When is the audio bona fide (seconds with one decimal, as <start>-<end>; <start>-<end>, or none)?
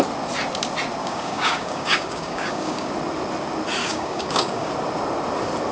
0.0-1.0; 2.9-3.8; 4.7-5.7